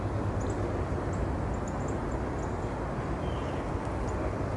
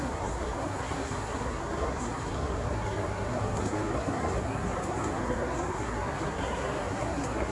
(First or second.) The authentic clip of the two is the first